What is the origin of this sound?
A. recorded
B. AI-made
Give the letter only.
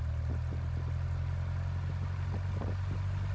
A